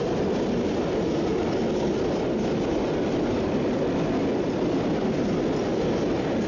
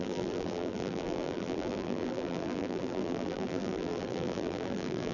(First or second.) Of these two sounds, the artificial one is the second